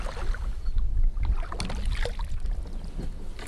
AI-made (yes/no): no